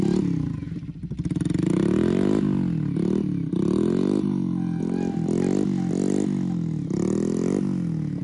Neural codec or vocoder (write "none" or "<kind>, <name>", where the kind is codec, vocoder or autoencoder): none